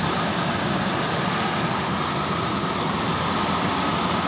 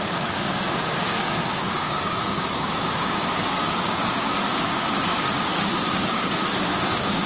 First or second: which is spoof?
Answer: second